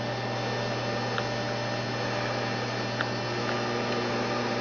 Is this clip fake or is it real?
real